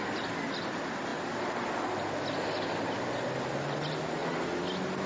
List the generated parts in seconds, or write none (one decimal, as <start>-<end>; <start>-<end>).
none